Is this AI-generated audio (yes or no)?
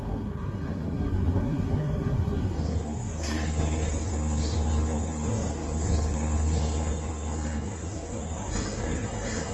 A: yes